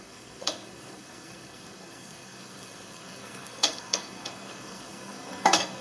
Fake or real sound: fake